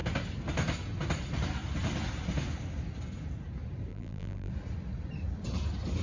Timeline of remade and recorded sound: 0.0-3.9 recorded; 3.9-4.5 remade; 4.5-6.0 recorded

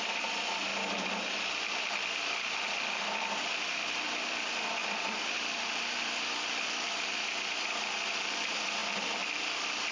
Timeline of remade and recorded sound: 0.0-0.7 remade; 0.7-1.5 recorded; 1.5-9.9 remade

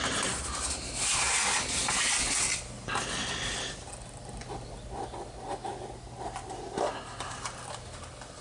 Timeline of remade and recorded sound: 0.0-8.4 recorded

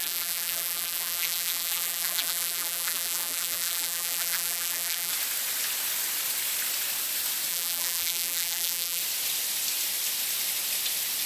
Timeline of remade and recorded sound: 0.0-5.1 remade; 5.1-7.5 recorded; 7.5-9.0 remade; 9.0-11.3 recorded

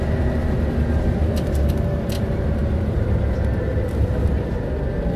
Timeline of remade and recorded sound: 0.0-2.6 recorded; 2.6-4.3 remade; 4.3-5.2 recorded

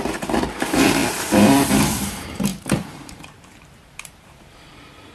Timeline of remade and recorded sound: 0.0-1.0 remade; 1.0-1.7 recorded; 1.7-5.1 remade

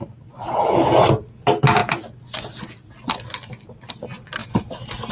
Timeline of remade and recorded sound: 0.0-4.4 recorded; 4.4-5.1 remade